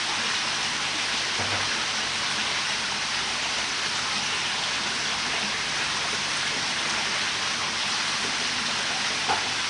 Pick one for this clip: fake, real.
real